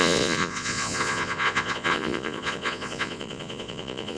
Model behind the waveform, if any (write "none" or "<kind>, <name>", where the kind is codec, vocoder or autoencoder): vocoder, Vocos